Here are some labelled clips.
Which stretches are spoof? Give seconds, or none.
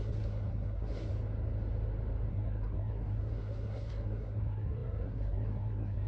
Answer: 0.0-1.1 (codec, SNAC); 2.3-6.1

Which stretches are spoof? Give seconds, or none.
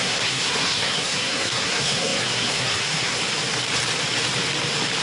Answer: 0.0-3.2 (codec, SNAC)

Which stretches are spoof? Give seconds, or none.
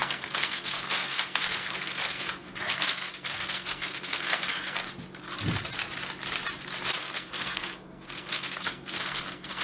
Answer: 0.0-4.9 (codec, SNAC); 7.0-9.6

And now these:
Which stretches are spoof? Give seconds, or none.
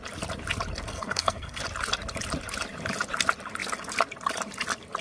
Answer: 0.9-1.6 (codec, SNAC)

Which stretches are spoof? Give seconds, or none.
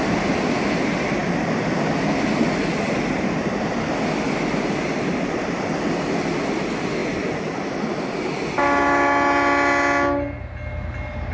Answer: none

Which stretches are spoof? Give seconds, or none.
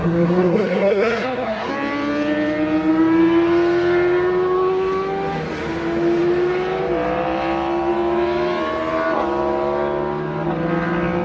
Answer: 0.0-1.7 (codec, SNAC)